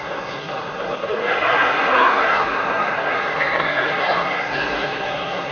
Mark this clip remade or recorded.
remade